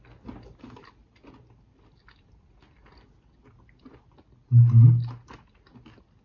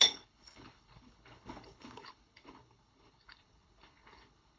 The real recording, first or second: first